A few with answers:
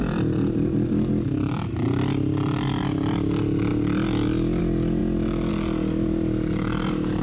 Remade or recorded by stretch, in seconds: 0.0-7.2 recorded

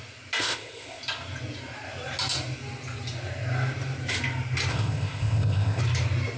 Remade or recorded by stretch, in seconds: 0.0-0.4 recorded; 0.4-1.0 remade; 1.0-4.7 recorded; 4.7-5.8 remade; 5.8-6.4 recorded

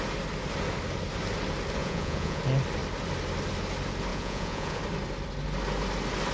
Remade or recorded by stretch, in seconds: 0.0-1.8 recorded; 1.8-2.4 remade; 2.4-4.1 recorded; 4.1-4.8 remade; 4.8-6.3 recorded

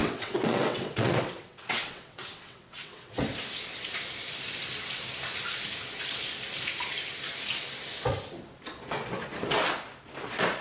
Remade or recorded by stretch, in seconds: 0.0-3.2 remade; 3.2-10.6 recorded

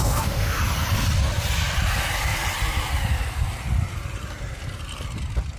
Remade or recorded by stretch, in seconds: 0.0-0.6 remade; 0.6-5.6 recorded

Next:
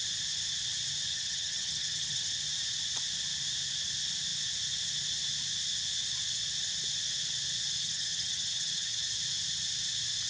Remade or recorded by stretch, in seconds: 0.0-1.1 recorded; 1.1-2.3 remade; 2.3-7.8 recorded; 7.8-9.0 remade; 9.0-10.3 recorded

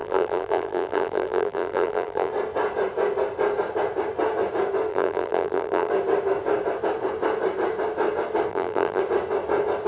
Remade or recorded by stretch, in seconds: 0.0-2.3 remade; 2.3-4.9 recorded; 4.9-5.9 remade; 5.9-8.5 recorded; 8.5-9.0 remade; 9.0-9.9 recorded

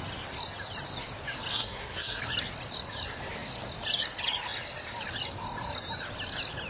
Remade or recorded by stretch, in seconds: 0.0-1.5 recorded; 1.5-2.2 remade; 2.2-6.7 recorded